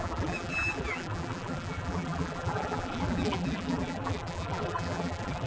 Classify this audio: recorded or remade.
remade